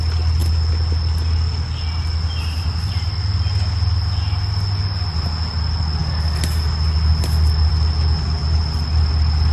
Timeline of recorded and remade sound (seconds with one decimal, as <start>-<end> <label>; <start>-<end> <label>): 0.0-9.5 recorded